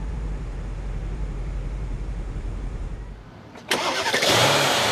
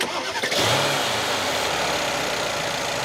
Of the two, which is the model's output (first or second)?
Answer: first